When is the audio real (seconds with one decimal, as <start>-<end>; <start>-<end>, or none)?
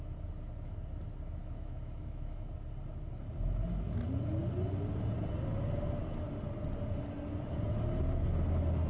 0.0-1.4; 2.5-8.9